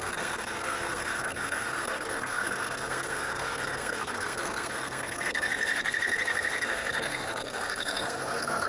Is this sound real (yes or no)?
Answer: no